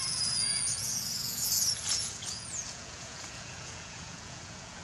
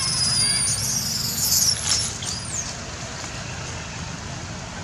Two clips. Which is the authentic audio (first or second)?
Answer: second